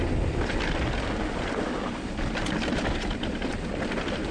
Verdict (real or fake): real